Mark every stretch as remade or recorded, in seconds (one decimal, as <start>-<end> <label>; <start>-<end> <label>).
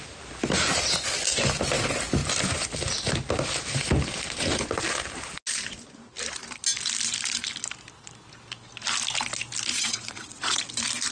0.0-9.7 recorded; 9.7-10.6 remade; 10.6-11.1 recorded